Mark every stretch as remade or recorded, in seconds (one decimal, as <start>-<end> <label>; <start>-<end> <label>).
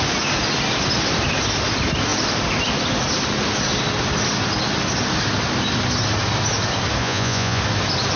0.0-7.0 recorded; 7.0-7.6 remade; 7.6-8.2 recorded